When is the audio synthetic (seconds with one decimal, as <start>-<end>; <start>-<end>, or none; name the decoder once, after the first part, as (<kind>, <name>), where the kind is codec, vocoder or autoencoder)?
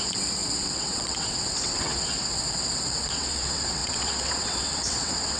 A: 0.0-5.4 (vocoder, WaveNeXt)